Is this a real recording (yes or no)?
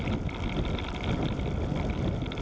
yes